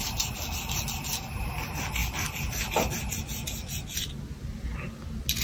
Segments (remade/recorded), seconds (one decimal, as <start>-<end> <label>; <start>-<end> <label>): 0.0-5.4 recorded